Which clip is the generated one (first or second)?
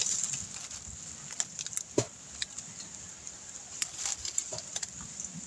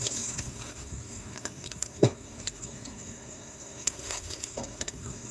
second